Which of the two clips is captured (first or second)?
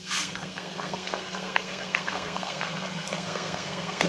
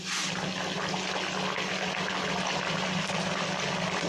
second